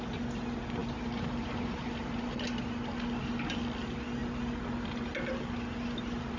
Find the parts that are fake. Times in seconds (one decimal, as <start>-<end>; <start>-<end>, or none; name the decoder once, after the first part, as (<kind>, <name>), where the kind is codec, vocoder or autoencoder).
0.8-2.6 (vocoder, BigVGAN v2)